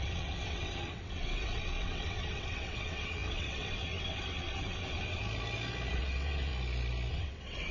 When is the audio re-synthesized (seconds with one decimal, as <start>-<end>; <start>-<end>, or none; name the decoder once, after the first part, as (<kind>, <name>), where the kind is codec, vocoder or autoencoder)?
0.0-5.2 (vocoder, WaveNeXt); 5.9-6.5; 7.1-7.7